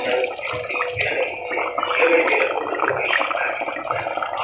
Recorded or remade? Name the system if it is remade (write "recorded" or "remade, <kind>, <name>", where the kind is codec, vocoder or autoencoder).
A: recorded